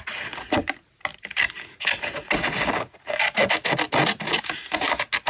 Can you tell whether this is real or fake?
real